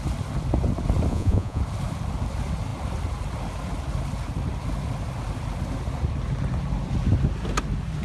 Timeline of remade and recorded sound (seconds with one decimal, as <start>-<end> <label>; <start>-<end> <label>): 0.0-1.1 recorded; 1.1-1.6 remade; 1.6-8.0 recorded